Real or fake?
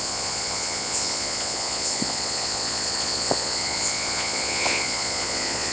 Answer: fake